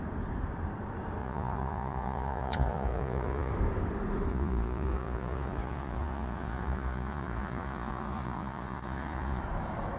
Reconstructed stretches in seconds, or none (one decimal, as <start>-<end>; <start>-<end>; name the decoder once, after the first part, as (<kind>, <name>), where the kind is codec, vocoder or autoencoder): 1.2-3.5 (vocoder, Vocos); 4.3-9.4